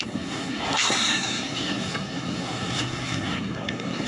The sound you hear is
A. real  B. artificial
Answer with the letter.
B